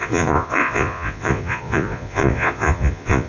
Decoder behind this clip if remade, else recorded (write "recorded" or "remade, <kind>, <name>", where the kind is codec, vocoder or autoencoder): remade, vocoder, Vocos